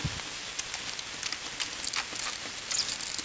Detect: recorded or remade recorded